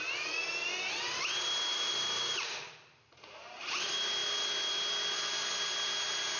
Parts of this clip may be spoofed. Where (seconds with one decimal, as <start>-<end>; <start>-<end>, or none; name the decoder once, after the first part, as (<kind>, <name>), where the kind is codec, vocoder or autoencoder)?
1.7-3.6 (vocoder, BigVGAN v2)